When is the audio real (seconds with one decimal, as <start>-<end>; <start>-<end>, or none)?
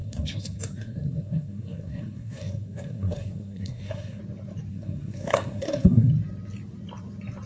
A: 4.2-4.7; 6.1-7.5